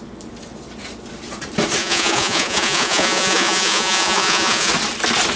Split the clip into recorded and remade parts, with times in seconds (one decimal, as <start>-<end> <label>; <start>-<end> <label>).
0.0-1.8 recorded; 1.8-4.7 remade; 4.7-5.4 recorded